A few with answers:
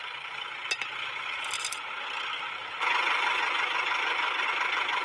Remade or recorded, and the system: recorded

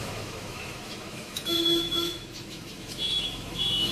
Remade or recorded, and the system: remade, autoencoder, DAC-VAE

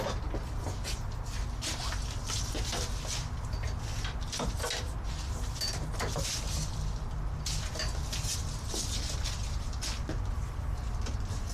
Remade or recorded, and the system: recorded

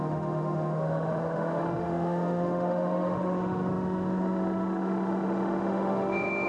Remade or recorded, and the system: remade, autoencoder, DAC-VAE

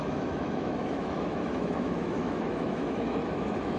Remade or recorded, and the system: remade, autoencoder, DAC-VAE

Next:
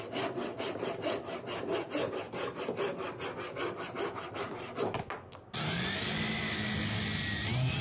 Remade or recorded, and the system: recorded